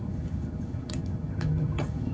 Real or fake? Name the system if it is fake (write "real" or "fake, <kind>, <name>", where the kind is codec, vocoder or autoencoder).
fake, vocoder, HiFi-GAN